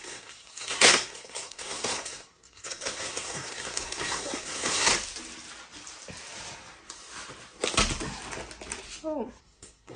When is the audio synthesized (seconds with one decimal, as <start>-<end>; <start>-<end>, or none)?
0.0-4.9; 9.4-10.0